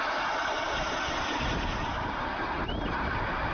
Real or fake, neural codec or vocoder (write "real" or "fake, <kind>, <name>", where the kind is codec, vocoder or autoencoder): real